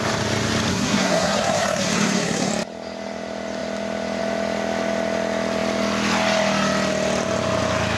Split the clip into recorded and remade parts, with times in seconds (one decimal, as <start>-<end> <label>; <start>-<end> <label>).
0.0-0.7 recorded; 0.7-2.5 remade; 2.5-8.0 recorded